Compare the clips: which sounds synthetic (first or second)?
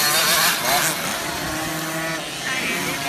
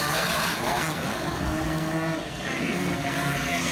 second